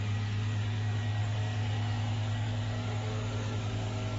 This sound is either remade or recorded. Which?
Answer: remade